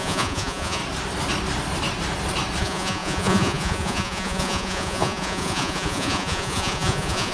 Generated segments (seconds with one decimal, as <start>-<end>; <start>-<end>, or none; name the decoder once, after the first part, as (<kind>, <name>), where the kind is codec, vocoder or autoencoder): 0.0-0.8 (vocoder, Vocos); 2.6-7.3